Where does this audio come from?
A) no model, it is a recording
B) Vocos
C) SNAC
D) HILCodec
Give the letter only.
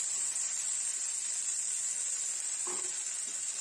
A